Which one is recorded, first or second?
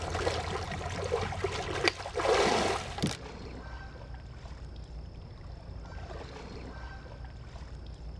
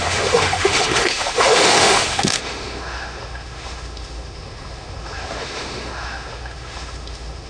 first